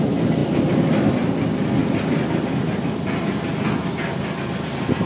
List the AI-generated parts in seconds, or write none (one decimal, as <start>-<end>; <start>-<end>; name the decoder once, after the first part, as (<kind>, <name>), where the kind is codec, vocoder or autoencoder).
none

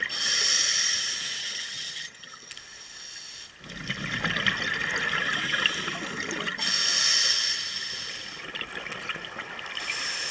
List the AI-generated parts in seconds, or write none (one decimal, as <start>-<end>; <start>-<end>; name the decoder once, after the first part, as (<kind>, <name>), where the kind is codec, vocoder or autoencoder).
1.4-2.5 (vocoder, HiFi-GAN)

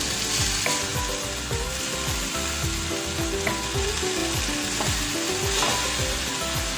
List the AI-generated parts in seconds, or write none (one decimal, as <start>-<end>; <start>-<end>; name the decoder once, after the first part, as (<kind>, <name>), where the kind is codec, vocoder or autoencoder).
none